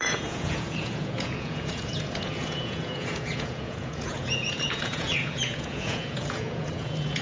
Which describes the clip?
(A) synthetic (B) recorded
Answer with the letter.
A